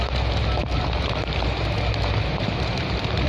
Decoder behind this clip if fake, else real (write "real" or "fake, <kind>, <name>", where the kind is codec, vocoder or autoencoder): real